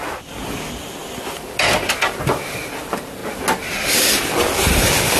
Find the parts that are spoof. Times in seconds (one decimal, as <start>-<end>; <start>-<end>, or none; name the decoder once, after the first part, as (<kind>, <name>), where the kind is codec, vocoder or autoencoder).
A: 0.0-1.0 (vocoder, BigVGAN v2); 2.7-3.2; 4.2-5.2